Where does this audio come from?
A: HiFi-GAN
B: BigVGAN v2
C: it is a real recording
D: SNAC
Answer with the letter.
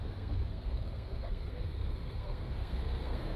D